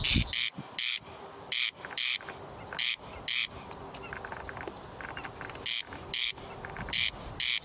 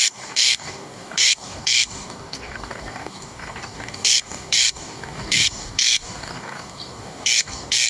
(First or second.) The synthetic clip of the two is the second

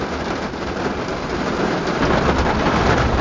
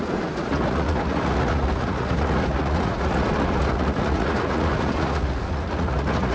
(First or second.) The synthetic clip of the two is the second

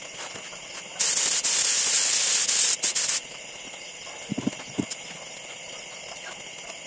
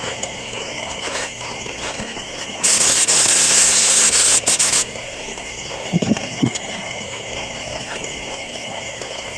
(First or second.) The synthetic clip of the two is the second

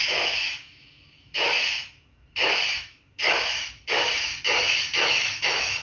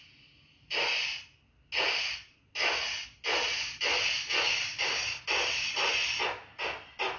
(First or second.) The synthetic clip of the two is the first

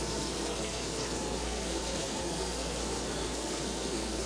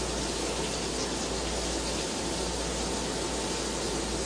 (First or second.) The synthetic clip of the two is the first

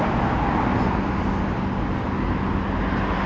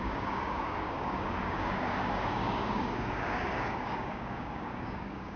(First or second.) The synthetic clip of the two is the second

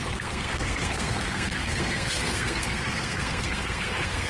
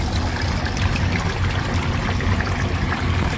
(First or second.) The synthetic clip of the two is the first